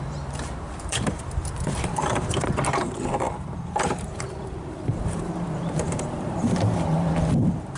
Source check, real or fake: fake